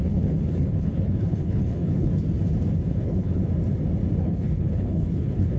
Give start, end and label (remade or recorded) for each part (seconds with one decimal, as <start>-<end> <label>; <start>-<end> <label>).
0.0-2.1 remade; 2.1-2.9 recorded; 2.9-3.4 remade; 3.4-4.2 recorded; 4.2-5.6 remade